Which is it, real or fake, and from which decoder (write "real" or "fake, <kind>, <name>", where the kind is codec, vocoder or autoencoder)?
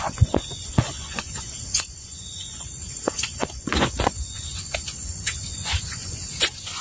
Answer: fake, vocoder, Vocos